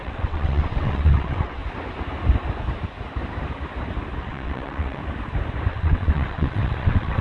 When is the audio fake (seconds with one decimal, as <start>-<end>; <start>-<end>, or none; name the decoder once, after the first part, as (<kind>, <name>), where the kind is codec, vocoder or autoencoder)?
0.0-1.6 (vocoder, WaveNeXt); 4.2-5.0; 5.7-7.2